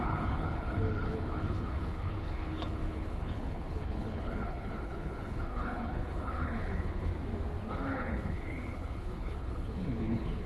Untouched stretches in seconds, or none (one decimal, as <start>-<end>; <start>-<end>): 7.1-7.7